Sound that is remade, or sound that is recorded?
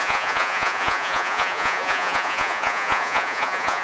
remade